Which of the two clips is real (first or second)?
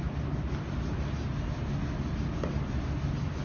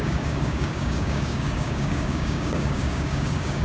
first